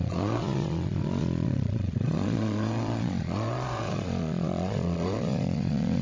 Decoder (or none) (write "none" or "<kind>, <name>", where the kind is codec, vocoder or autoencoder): vocoder, Vocos